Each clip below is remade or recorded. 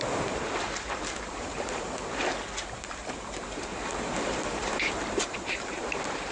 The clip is remade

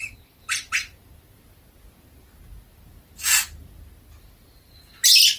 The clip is recorded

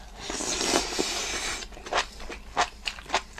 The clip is recorded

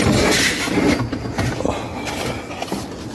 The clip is recorded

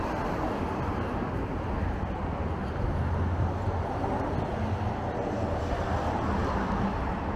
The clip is recorded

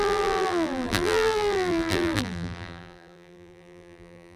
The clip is remade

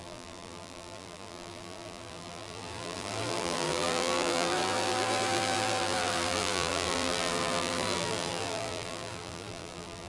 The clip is remade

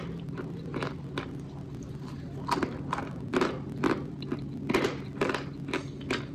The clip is recorded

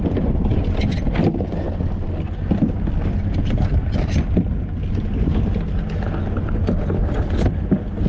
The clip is recorded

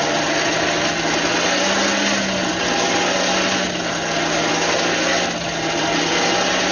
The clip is recorded